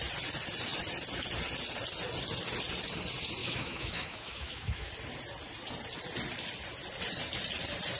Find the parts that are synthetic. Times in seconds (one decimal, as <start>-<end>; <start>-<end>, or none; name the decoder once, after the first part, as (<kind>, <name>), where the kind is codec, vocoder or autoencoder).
3.4-4.9 (autoencoder, DAC-VAE)